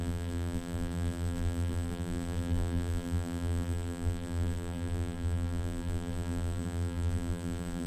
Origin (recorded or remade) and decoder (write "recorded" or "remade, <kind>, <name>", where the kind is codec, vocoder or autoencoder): remade, vocoder, BigVGAN v2